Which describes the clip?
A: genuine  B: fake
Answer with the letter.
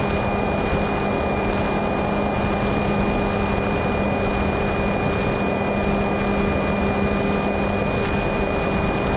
A